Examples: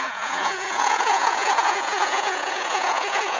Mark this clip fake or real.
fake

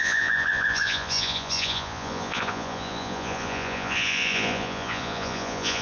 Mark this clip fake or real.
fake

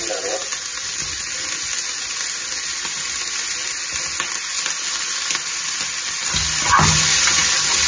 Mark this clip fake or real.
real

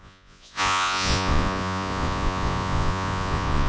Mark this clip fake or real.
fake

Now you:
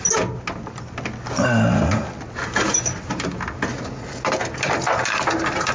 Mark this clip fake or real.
real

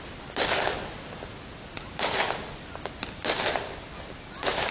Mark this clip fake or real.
real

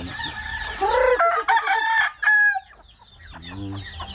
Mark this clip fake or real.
real